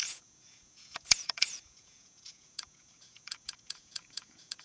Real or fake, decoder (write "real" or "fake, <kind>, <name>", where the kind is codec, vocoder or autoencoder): fake, vocoder, Vocos